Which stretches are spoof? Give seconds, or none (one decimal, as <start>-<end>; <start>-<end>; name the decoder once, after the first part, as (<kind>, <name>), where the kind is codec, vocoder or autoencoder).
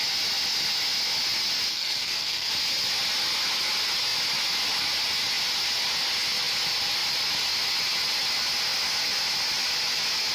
1.7-2.5 (codec, SNAC)